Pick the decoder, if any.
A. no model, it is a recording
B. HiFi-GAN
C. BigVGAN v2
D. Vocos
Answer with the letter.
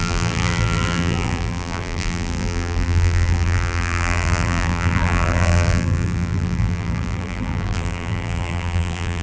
C